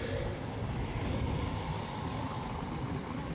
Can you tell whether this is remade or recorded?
recorded